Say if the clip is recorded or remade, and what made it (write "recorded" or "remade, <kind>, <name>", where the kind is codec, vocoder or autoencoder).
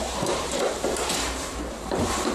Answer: remade, vocoder, BigVGAN v2